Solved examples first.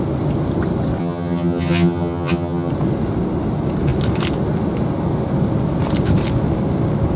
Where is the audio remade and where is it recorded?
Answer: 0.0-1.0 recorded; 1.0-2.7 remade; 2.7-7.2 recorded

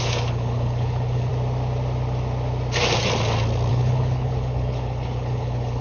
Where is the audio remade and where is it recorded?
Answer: 0.0-1.3 remade; 1.3-3.7 recorded; 3.7-5.8 remade

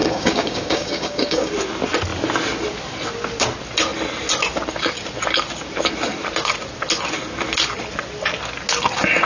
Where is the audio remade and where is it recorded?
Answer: 0.0-1.5 remade; 1.5-9.3 recorded

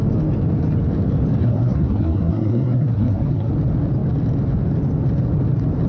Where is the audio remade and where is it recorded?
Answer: 0.0-1.4 recorded; 1.4-3.5 remade; 3.5-5.9 recorded